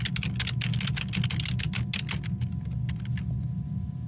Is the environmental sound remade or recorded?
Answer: recorded